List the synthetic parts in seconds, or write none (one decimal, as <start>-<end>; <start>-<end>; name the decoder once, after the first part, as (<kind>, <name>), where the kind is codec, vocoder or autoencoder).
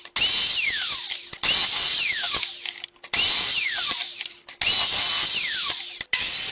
none